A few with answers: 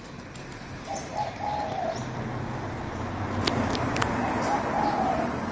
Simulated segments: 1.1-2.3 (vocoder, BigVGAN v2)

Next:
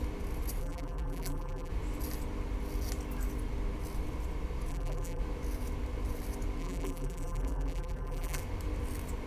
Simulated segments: 0.6-1.7 (vocoder, BigVGAN v2); 4.7-5.2; 6.6-8.4

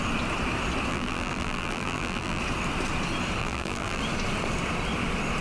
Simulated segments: 0.9-2.4 (vocoder, BigVGAN v2); 3.4-4.0